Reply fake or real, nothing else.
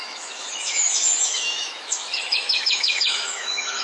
fake